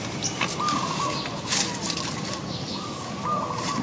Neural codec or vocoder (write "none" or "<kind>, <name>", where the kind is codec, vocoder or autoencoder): none